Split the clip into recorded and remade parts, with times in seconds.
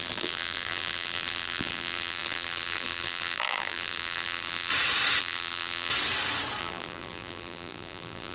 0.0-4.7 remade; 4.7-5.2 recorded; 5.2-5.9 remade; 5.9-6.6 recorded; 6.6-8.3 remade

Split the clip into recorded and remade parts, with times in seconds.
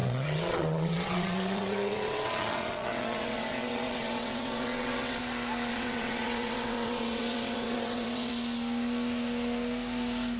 0.0-5.2 remade; 5.2-5.7 recorded; 5.7-8.3 remade; 8.3-10.4 recorded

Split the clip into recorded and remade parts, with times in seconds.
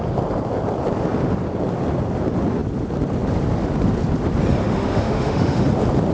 0.0-4.6 recorded; 4.6-5.6 remade; 5.6-6.1 recorded